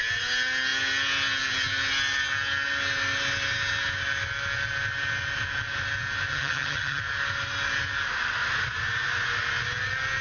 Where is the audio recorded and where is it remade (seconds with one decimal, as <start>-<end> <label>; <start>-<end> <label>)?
0.0-6.3 recorded; 6.3-7.0 remade; 7.0-10.2 recorded